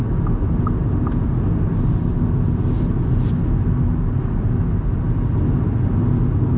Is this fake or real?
real